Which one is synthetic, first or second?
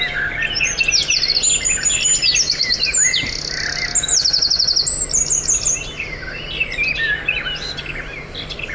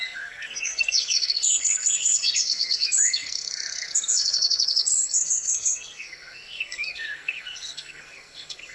second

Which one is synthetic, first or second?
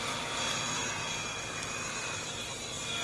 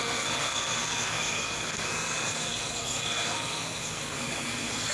second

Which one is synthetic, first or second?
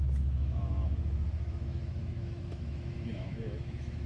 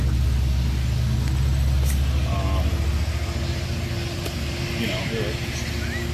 first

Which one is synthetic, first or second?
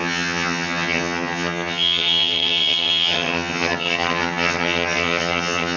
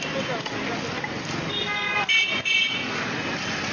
first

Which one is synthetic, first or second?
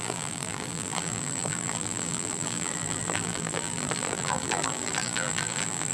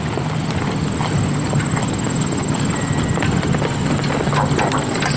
first